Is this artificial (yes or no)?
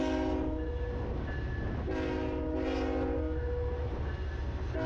no